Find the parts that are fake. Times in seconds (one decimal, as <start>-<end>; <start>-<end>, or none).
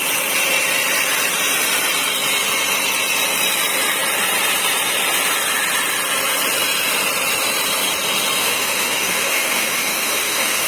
8.4-10.7